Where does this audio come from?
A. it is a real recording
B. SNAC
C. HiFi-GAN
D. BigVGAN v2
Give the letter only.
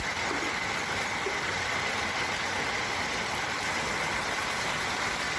A